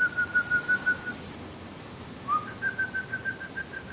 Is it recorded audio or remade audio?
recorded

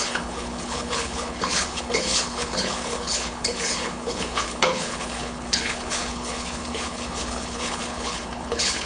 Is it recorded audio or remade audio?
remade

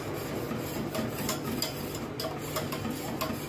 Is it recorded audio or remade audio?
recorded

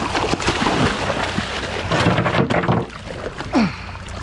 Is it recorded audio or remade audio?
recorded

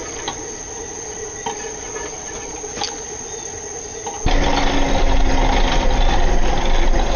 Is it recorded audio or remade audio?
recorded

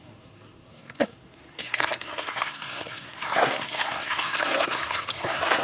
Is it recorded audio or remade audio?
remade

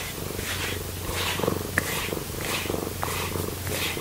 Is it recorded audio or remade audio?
recorded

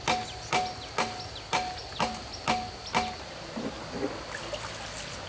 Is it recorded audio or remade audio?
recorded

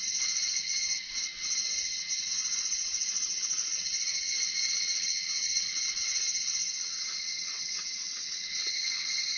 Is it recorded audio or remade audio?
remade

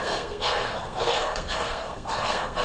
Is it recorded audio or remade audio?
remade